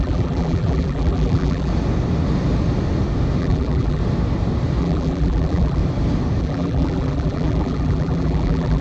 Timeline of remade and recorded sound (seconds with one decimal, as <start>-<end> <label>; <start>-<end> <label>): 0.0-1.7 remade; 1.7-3.4 recorded; 3.4-4.0 remade; 4.0-4.8 recorded; 4.8-5.8 remade; 5.8-6.4 recorded; 6.4-8.8 remade